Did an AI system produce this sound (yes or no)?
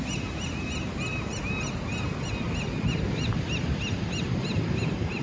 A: no